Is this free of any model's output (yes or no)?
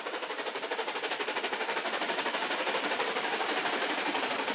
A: no